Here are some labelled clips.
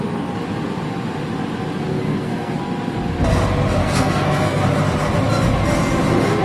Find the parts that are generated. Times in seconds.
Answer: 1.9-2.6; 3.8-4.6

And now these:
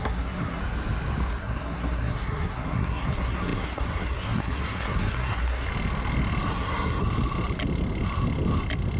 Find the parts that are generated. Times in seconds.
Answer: 0.0-0.6; 1.4-5.7; 6.5-7.0

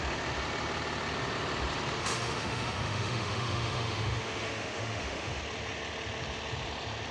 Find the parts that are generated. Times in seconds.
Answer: 2.0-5.4

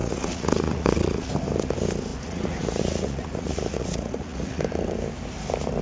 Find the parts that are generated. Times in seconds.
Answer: 0.0-1.3; 2.1-4.6

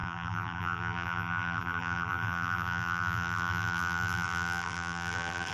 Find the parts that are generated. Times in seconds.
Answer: 0.0-5.5

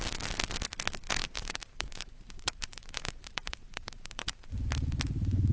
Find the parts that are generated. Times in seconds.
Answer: 1.2-4.5

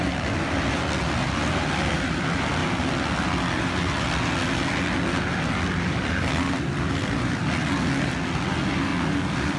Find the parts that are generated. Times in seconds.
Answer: none

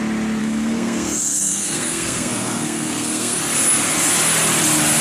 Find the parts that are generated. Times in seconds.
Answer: 0.4-3.4